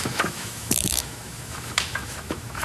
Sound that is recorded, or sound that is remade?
remade